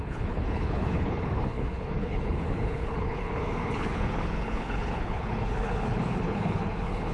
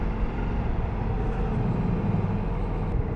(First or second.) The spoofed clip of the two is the first